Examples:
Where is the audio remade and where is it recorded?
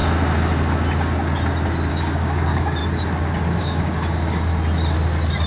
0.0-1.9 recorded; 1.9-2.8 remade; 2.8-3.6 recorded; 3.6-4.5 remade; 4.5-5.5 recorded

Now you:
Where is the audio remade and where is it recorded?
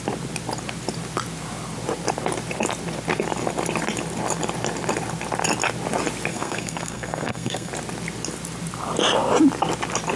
0.0-6.3 recorded; 6.3-7.7 remade; 7.7-10.2 recorded